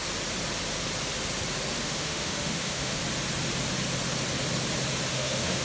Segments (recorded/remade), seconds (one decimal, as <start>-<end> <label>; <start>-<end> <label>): 0.0-1.8 recorded; 1.8-3.0 remade; 3.0-5.1 recorded; 5.1-5.6 remade